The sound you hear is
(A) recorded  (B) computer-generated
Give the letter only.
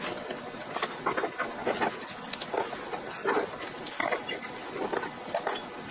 A